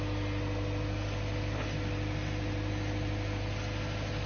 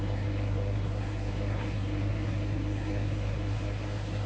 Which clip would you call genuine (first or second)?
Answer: first